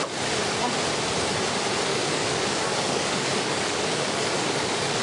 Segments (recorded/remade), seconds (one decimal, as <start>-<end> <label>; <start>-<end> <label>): 0.0-1.9 recorded; 1.9-5.0 remade